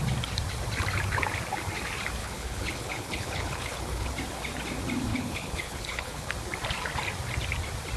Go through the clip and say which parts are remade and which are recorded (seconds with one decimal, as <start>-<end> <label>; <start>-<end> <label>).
0.0-2.2 recorded; 2.2-4.1 remade; 4.1-5.1 recorded; 5.1-6.3 remade; 6.3-8.0 recorded